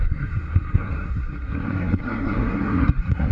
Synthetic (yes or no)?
yes